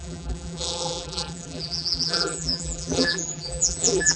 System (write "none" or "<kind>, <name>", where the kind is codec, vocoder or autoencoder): vocoder, BigVGAN v2